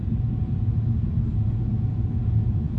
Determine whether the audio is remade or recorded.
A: remade